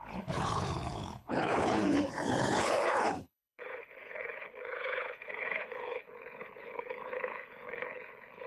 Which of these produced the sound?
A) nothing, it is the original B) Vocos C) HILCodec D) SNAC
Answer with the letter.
C